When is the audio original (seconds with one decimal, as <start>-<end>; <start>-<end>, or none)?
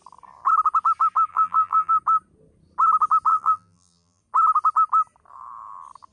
0.0-1.3; 1.9-3.3; 4.2-6.1